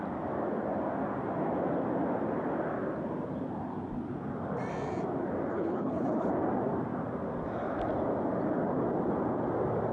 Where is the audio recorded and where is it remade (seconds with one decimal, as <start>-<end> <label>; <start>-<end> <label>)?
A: 0.0-5.5 recorded; 5.5-6.3 remade; 6.3-9.9 recorded

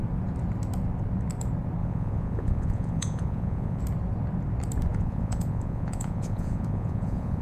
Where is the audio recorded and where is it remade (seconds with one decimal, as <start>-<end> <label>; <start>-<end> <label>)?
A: 0.0-1.8 recorded; 1.8-3.8 remade; 3.8-4.9 recorded; 4.9-7.4 remade

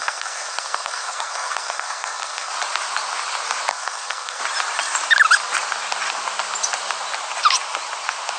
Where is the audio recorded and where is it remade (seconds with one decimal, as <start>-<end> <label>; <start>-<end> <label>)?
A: 0.0-2.5 remade; 2.5-3.7 recorded; 3.7-4.4 remade; 4.4-8.4 recorded

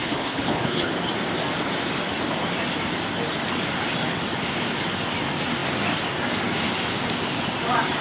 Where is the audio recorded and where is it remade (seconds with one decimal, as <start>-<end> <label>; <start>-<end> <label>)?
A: 0.0-0.9 remade; 0.9-8.0 recorded